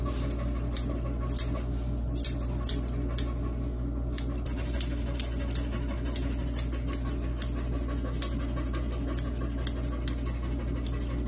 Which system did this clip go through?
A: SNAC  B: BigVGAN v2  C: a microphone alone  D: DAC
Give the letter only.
C